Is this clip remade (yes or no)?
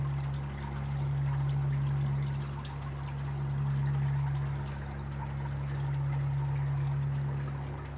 no